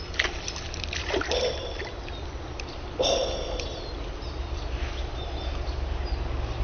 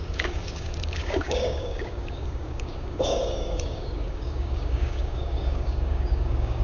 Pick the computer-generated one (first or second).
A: second